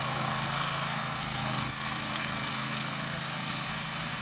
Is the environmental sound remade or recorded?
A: remade